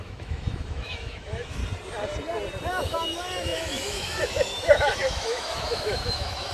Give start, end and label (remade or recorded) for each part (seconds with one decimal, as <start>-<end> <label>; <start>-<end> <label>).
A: 0.0-1.6 remade; 1.6-2.7 recorded; 2.7-6.5 remade